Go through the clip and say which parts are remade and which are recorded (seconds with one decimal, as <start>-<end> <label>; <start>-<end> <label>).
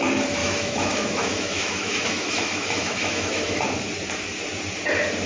0.0-0.4 recorded; 0.4-3.6 remade; 3.6-5.3 recorded